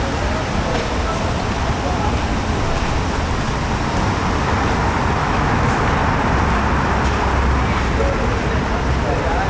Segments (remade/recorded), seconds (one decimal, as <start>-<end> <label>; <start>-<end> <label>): 0.0-5.2 recorded; 5.2-5.8 remade; 5.8-9.5 recorded